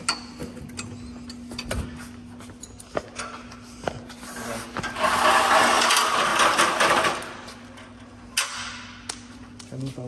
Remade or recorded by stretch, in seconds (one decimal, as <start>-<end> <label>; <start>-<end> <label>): 0.0-10.1 recorded